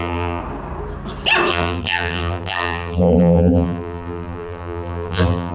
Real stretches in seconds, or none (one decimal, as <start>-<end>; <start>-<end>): 0.4-1.5